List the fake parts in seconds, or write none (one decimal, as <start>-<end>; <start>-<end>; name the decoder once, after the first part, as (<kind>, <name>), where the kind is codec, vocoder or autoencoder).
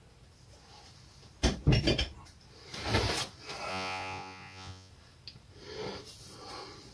3.7-4.9 (vocoder, Vocos)